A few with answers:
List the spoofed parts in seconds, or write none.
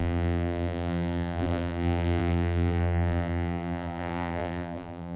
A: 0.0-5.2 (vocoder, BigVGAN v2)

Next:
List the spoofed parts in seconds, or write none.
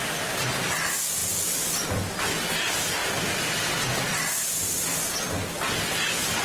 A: none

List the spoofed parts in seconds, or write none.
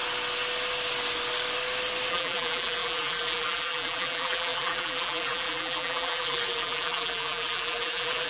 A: 2.1-8.3 (vocoder, BigVGAN v2)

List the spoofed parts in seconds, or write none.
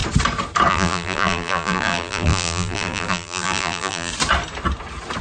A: 0.7-4.1 (vocoder, BigVGAN v2)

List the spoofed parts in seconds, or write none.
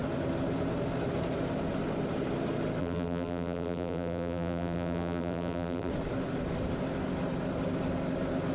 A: 2.8-5.9 (vocoder, BigVGAN v2)